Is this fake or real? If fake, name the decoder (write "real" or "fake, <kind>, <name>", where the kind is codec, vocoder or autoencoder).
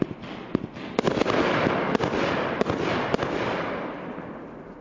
real